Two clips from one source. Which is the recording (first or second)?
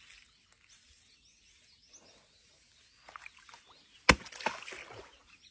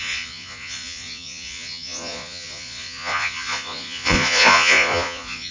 first